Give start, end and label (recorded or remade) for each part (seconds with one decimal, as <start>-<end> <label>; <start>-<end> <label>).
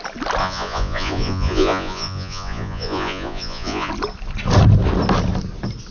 0.0-0.4 recorded; 0.4-3.9 remade; 3.9-5.9 recorded